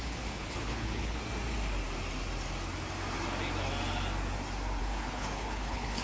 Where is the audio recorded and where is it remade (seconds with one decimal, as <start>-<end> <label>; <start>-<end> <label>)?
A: 0.0-1.2 remade; 1.2-4.8 recorded; 4.8-6.0 remade